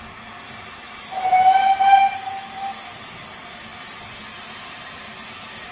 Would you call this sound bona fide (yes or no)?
yes